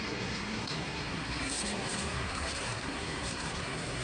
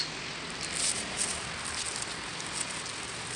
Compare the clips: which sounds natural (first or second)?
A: second